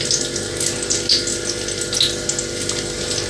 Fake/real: real